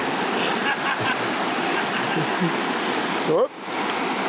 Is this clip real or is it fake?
real